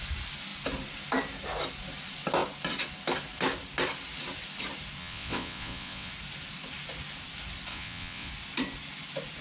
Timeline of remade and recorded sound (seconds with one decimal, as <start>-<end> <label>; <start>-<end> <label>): 0.0-5.0 recorded; 5.0-6.1 remade; 6.1-7.7 recorded; 7.7-8.3 remade; 8.3-9.4 recorded